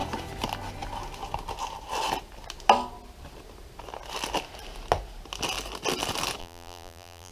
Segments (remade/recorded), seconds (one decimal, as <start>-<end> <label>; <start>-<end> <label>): 0.0-6.4 recorded; 6.4-7.3 remade

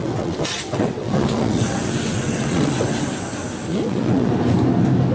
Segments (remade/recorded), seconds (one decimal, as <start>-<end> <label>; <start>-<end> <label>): 0.0-3.1 remade; 3.1-3.7 recorded; 3.7-4.3 remade; 4.3-5.1 recorded